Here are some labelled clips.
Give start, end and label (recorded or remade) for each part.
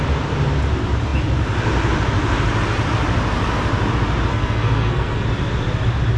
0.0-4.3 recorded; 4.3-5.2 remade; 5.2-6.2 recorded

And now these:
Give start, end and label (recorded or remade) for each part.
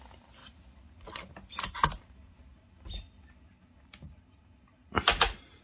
0.0-5.6 recorded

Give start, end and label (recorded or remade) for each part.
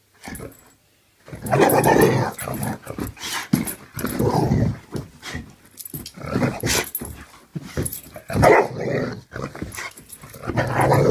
0.0-7.5 recorded; 7.5-8.0 remade; 8.0-11.1 recorded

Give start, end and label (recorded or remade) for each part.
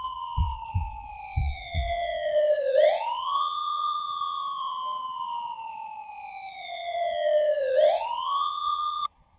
0.0-9.4 remade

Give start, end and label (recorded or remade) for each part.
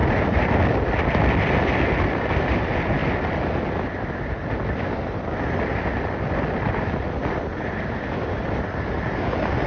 0.0-0.5 remade; 0.5-9.7 recorded